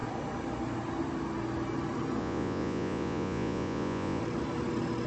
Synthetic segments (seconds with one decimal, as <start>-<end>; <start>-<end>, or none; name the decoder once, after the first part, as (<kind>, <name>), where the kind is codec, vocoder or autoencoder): 2.2-4.2 (vocoder, Vocos)